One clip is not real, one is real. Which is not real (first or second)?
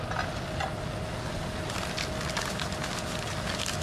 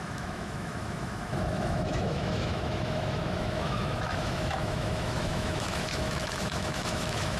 second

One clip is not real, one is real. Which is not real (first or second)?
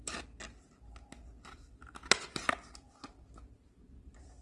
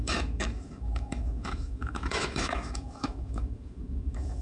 second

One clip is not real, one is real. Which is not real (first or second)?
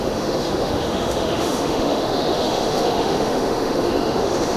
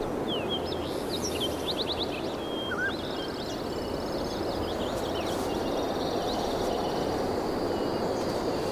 first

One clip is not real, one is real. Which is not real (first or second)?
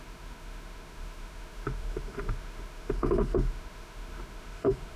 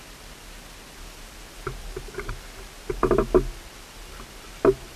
first